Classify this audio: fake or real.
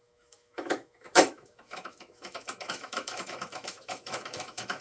fake